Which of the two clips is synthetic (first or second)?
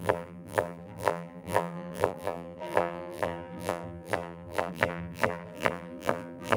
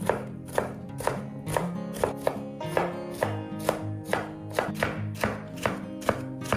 first